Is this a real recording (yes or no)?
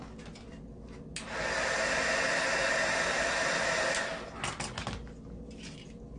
yes